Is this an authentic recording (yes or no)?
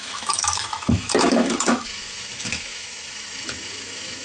no